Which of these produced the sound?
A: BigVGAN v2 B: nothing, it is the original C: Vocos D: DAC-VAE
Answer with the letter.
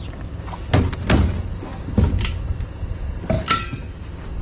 B